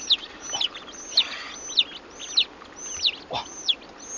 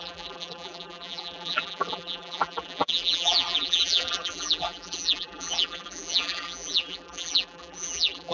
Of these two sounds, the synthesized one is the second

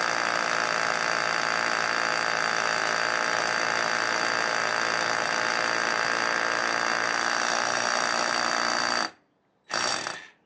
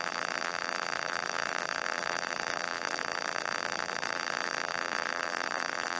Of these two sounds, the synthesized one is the second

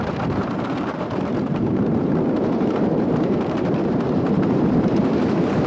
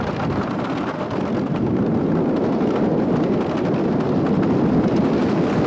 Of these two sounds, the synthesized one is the first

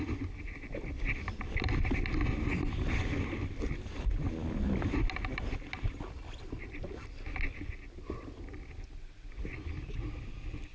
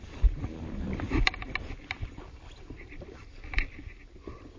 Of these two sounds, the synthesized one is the second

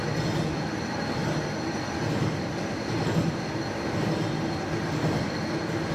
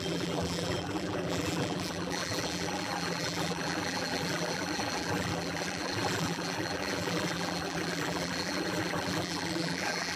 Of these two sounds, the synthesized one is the second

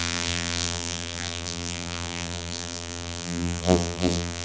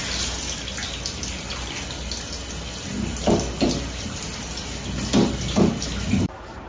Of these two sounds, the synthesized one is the first